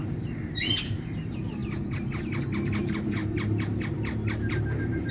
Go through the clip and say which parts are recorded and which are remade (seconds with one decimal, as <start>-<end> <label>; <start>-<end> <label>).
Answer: 0.0-1.6 remade; 1.6-2.8 recorded; 2.8-3.2 remade; 3.2-4.5 recorded; 4.5-5.1 remade